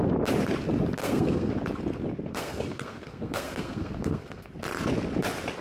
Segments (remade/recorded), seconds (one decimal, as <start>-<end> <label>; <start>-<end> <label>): 0.0-1.0 recorded; 1.0-1.5 remade; 1.5-2.3 recorded; 2.3-4.5 remade; 4.5-5.6 recorded

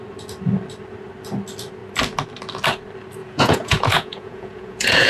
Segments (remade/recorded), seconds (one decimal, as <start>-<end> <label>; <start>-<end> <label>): 0.0-3.2 recorded; 3.2-5.1 remade

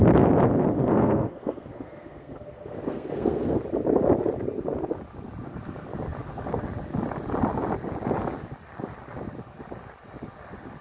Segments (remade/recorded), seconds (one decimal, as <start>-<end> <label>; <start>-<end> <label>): 0.0-0.9 recorded; 0.9-3.6 remade; 3.6-10.8 recorded

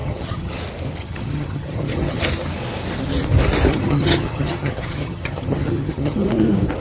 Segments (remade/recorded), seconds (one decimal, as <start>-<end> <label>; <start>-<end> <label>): 0.0-0.6 remade; 0.6-1.0 recorded; 1.0-2.2 remade; 2.2-3.7 recorded; 3.7-6.3 remade; 6.3-6.8 recorded

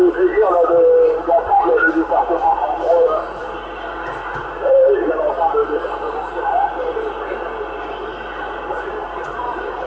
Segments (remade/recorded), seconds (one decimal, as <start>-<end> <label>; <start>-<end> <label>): 0.0-3.4 remade; 3.4-4.4 recorded; 4.4-5.6 remade; 5.6-8.7 recorded; 8.7-9.9 remade